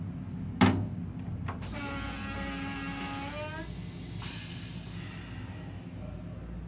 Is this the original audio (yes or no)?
yes